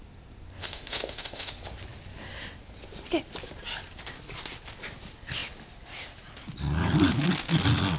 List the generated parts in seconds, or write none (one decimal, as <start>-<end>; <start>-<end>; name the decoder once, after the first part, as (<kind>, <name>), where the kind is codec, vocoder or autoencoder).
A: 0.6-1.5 (autoencoder, DAC-VAE)